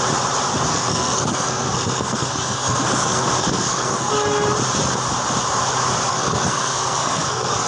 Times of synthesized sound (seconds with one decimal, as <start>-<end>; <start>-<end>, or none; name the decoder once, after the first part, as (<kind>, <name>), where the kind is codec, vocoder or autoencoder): 0.7-4.1 (codec, SNAC); 6.1-7.7